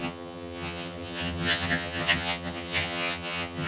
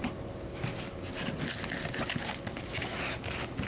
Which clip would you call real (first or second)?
second